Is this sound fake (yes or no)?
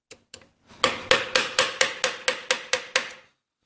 no